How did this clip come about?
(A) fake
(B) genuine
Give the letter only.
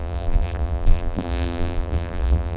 A